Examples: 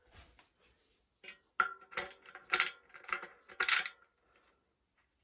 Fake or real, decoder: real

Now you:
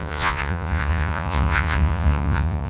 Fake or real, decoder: fake, vocoder, Vocos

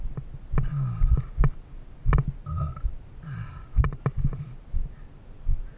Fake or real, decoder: real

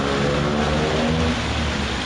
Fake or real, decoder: real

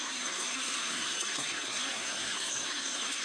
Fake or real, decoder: fake, codec, SNAC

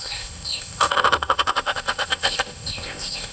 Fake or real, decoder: fake, codec, ZipCodec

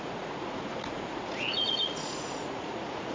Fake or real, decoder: fake, vocoder, Vocos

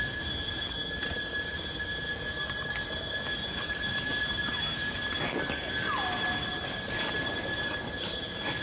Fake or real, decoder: real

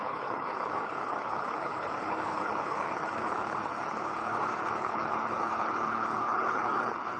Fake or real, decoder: fake, codec, HILCodec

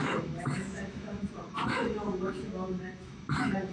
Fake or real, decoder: fake, autoencoder, DAC-VAE